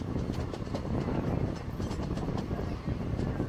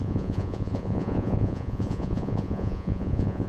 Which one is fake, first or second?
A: second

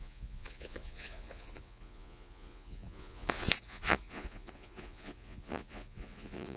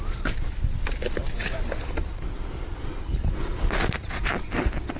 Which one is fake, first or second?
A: first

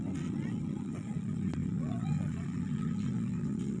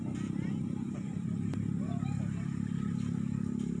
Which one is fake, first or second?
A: first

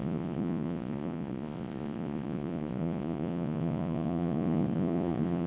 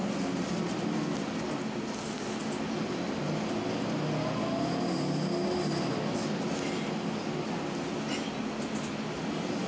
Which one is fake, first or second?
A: first